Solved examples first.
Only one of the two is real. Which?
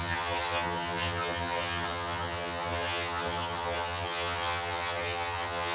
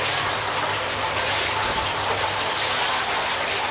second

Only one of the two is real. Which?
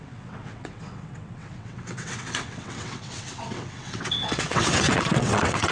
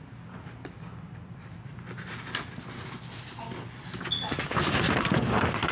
second